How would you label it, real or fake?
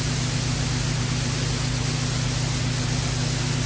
real